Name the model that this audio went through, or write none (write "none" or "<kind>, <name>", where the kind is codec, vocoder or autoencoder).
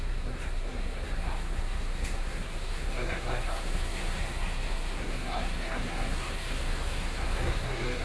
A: codec, SNAC